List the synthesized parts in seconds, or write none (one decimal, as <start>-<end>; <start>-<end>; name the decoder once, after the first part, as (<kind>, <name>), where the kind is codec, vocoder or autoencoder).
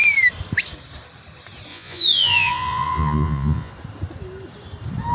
1.7-3.7 (vocoder, Vocos)